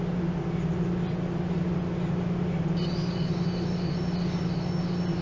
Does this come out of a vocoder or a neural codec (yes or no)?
no